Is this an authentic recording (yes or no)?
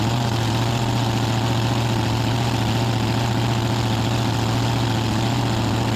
yes